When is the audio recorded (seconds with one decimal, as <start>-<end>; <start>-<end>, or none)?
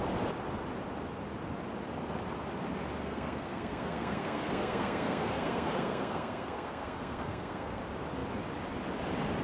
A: 0.0-3.0; 7.8-9.4